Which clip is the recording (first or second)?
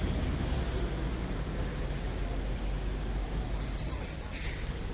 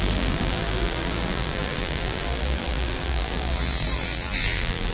first